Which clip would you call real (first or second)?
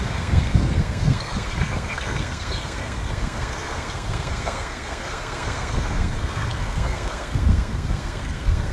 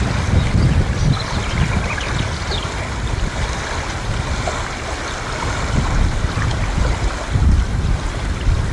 second